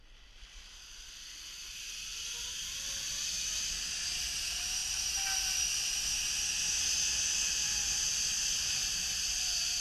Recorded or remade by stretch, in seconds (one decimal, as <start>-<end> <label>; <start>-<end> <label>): 0.0-9.8 recorded

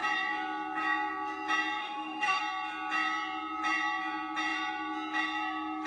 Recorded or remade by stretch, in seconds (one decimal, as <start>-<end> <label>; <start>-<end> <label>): 0.0-1.8 recorded; 1.8-2.4 remade; 2.4-5.9 recorded

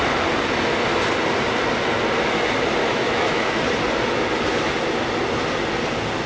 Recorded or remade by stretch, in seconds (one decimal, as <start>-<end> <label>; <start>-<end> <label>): 0.0-2.8 recorded; 2.8-3.6 remade; 3.6-6.3 recorded

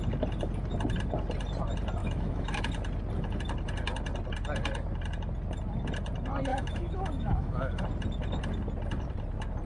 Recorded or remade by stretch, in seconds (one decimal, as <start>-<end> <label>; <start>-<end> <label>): 0.0-2.0 recorded; 2.0-2.6 remade; 2.6-6.5 recorded; 6.5-7.8 remade; 7.8-9.7 recorded